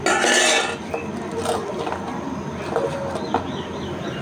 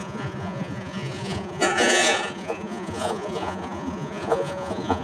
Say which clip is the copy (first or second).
second